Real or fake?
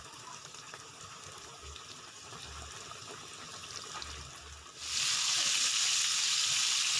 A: real